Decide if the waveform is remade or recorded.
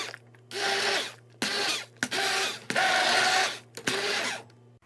recorded